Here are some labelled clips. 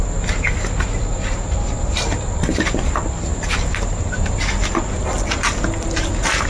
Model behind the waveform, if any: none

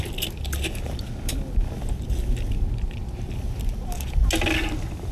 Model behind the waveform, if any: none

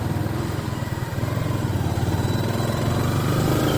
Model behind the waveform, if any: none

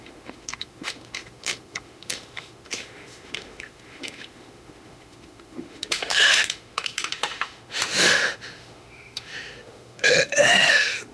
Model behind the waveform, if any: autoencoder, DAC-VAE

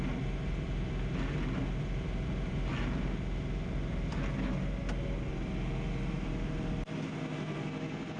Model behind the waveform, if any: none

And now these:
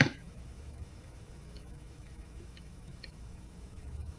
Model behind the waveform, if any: autoencoder, DAC-VAE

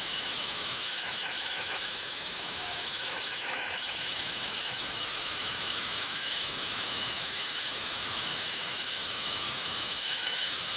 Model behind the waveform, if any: autoencoder, DAC-VAE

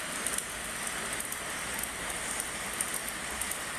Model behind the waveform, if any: none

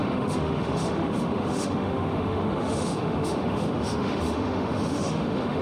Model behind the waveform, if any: autoencoder, DAC-VAE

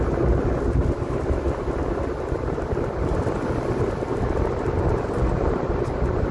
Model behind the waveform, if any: none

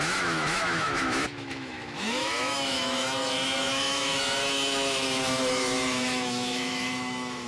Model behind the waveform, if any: autoencoder, DAC-VAE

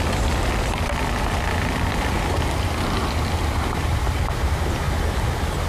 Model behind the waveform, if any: none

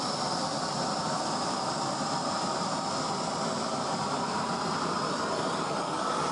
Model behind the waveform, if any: none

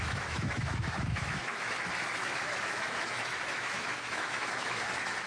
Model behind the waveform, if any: autoencoder, DAC-VAE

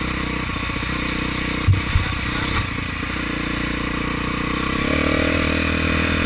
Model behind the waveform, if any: none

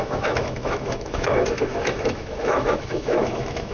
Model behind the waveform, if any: autoencoder, DAC-VAE